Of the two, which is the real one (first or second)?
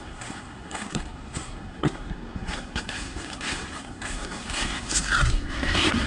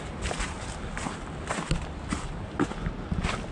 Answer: second